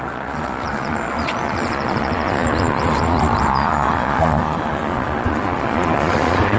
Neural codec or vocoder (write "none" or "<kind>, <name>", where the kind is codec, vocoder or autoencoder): vocoder, Vocos